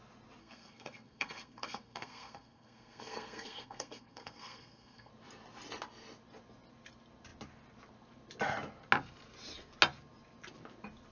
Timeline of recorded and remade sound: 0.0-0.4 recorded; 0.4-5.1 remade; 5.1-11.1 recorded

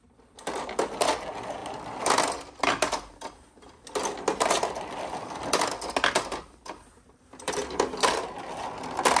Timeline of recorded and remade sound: 0.0-9.2 recorded

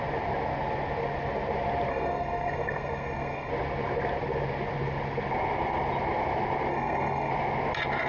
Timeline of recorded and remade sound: 0.0-1.9 recorded; 1.9-3.5 remade; 3.5-6.7 recorded; 6.7-7.3 remade; 7.3-8.1 recorded

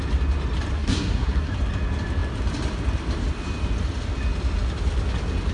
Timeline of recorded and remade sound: 0.0-0.7 recorded; 0.7-1.5 remade; 1.5-5.5 recorded

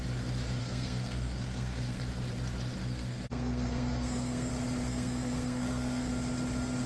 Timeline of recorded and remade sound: 0.0-0.6 recorded; 0.6-2.0 remade; 2.0-2.8 recorded; 2.8-4.5 remade; 4.5-4.9 recorded; 4.9-6.1 remade; 6.1-6.9 recorded

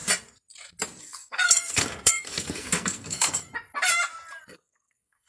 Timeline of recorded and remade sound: 0.0-1.0 recorded; 1.0-3.5 remade; 3.5-4.5 recorded; 4.5-5.3 remade

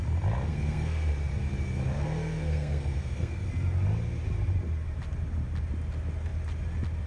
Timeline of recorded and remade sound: 0.0-0.5 recorded; 0.5-1.1 remade; 1.1-1.9 recorded; 1.9-3.5 remade; 3.5-7.1 recorded

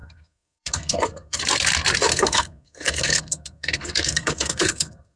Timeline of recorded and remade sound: 0.0-1.4 remade; 1.4-2.1 recorded; 2.1-5.2 remade